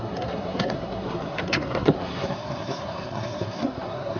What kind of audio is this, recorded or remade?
remade